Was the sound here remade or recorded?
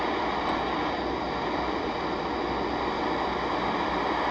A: recorded